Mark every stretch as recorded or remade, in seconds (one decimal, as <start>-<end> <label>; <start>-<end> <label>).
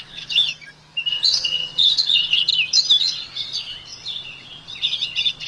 0.0-0.5 remade; 0.5-1.1 recorded; 1.1-2.5 remade; 2.5-3.0 recorded; 3.0-5.5 remade